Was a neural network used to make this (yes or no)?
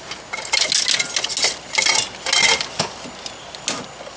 no